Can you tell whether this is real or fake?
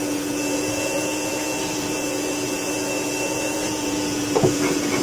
fake